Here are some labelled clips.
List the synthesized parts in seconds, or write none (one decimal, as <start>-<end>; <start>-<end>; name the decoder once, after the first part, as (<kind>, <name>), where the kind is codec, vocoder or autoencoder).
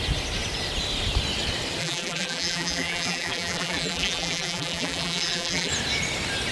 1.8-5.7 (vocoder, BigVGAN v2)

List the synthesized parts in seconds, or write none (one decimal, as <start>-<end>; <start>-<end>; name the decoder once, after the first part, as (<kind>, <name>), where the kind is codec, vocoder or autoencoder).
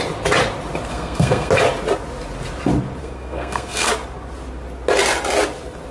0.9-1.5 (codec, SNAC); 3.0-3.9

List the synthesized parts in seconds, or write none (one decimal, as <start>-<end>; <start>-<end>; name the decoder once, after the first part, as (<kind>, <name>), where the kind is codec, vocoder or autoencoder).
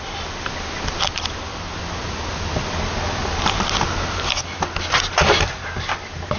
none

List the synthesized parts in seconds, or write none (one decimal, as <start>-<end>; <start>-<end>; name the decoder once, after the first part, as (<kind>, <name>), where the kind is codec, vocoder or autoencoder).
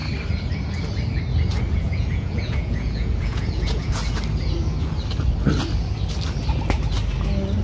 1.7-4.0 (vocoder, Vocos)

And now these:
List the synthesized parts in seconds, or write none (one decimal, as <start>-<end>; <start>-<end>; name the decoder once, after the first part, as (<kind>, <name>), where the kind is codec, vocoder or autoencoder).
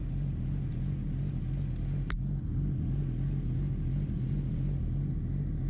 none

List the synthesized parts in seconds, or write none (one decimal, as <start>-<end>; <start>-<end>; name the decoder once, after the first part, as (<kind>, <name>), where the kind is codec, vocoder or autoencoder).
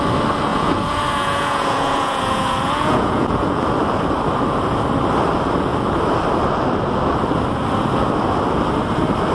0.5-3.6 (vocoder, Vocos)